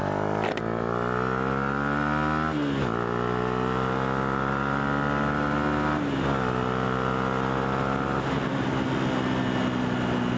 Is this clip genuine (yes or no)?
yes